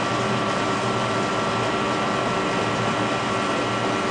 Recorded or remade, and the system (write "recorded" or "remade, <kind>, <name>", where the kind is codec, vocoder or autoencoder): recorded